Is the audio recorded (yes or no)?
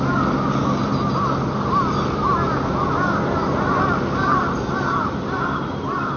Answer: yes